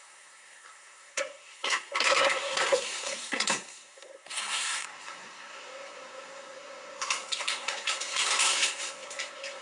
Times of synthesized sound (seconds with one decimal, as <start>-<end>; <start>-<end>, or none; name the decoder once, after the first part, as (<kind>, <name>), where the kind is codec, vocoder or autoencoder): 0.0-9.6 (codec, SNAC)

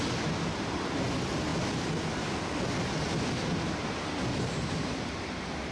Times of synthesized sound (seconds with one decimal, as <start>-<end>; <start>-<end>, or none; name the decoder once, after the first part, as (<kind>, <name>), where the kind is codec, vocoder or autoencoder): none

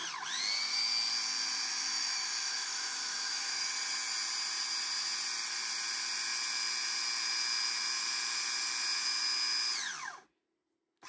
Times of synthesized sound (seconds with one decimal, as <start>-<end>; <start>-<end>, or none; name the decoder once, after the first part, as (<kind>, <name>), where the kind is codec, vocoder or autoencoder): 1.7-3.6 (autoencoder, DAC-VAE)

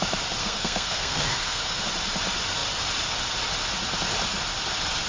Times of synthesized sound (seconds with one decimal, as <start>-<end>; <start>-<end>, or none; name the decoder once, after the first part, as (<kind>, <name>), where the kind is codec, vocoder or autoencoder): 0.4-1.8 (codec, SNAC)

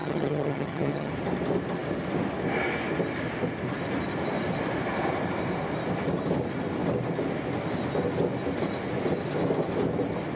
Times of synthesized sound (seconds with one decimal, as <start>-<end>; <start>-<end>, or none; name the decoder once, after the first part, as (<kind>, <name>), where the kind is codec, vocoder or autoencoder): 0.0-1.1 (vocoder, HiFi-GAN)

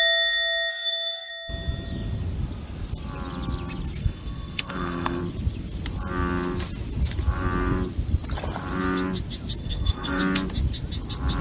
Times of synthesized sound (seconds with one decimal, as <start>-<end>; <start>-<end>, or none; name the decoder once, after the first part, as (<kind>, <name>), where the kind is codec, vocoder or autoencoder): 0.7-1.3 (codec, SNAC); 4.0-5.2; 9.6-10.2

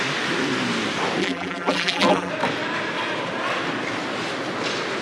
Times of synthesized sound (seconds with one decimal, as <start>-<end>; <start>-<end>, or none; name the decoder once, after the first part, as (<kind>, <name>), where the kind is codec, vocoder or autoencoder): 1.2-2.3 (vocoder, BigVGAN v2)